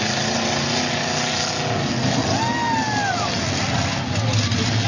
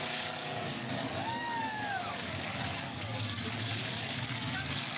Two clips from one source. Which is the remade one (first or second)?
second